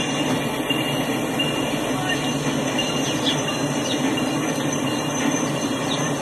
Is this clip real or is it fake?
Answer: real